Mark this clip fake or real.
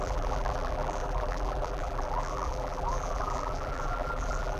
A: fake